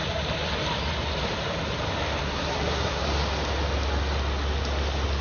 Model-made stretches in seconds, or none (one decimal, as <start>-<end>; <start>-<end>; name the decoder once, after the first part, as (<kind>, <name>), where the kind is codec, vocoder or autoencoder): 2.2-3.0 (codec, SNAC)